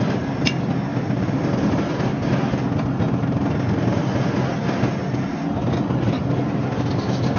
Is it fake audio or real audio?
real